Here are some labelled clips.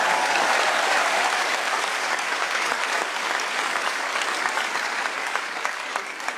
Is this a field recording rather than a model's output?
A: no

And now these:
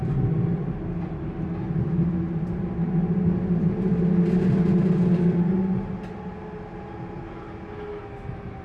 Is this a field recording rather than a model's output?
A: yes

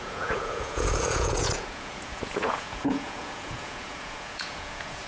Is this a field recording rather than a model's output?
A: no